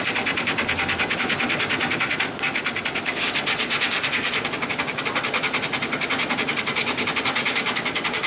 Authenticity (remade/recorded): recorded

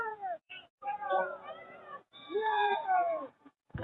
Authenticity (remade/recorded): remade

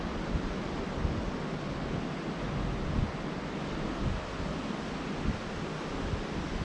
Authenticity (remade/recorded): recorded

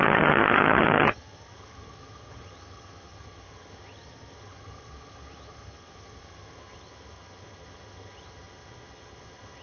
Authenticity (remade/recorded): remade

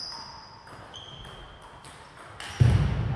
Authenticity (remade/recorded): recorded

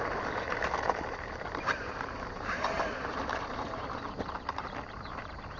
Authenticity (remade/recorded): remade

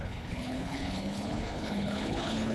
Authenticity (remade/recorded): remade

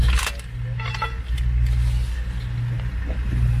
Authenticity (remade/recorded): recorded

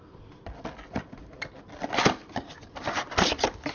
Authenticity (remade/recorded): recorded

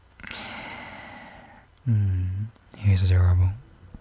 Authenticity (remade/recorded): recorded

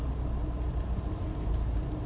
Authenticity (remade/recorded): recorded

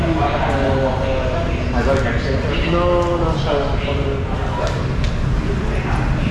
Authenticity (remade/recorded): recorded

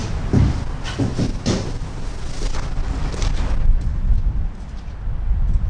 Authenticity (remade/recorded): recorded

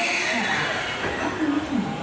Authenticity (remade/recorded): recorded